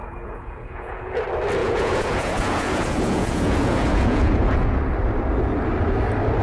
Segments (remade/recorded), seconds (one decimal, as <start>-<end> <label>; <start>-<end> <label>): 0.0-1.2 remade; 1.2-1.6 recorded; 1.6-4.8 remade; 4.8-6.4 recorded